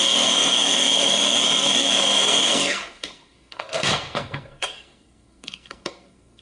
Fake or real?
fake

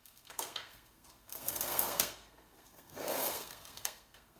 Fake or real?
fake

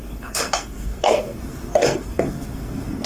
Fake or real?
fake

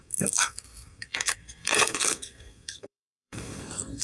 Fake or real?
fake